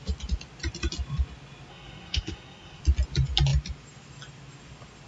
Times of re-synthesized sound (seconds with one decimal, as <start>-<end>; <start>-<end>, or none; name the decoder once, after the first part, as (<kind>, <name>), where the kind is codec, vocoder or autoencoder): 1.7-2.8 (codec, SNAC)